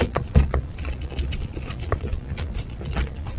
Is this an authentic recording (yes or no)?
no